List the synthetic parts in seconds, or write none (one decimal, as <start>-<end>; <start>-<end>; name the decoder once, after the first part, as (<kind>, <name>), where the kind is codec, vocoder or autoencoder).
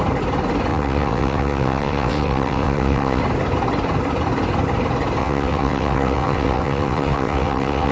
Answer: 0.7-3.2 (vocoder, WaveNeXt); 5.2-7.9